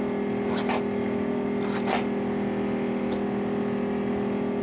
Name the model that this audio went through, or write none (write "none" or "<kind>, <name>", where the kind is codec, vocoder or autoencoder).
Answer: none